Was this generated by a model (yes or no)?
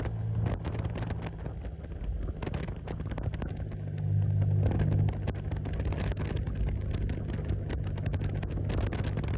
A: no